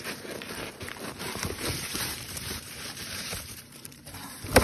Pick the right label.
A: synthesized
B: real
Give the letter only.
A